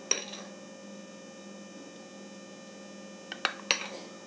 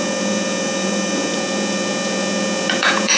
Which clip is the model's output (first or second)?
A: second